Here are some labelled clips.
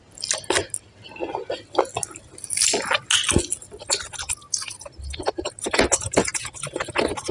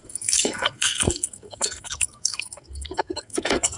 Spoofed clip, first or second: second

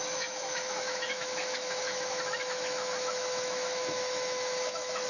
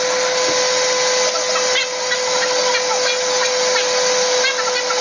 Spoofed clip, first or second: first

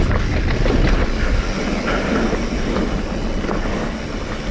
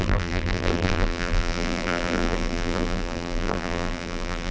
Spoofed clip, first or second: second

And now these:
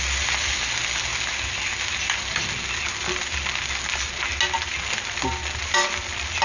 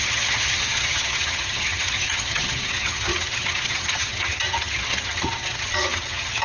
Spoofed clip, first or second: second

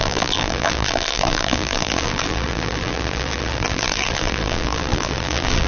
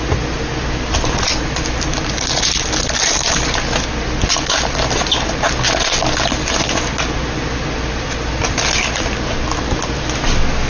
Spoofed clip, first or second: first